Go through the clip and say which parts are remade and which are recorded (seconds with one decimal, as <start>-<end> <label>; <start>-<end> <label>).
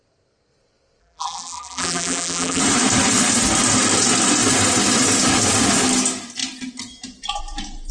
0.0-1.0 recorded; 1.0-2.6 remade; 2.6-7.9 recorded